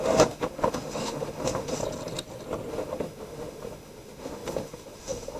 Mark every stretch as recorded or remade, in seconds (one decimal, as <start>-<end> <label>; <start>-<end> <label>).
0.0-1.8 remade; 1.8-2.7 recorded; 2.7-5.4 remade